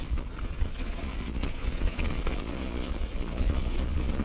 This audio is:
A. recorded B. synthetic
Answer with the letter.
B